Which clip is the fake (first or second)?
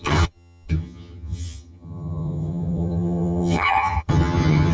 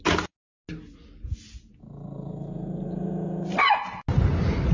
first